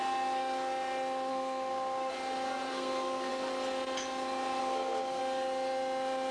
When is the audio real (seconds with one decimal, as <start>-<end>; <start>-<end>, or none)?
0.0-1.3; 2.1-2.7; 3.3-4.6; 5.2-6.3